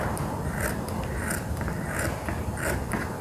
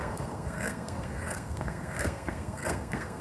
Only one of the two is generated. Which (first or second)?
second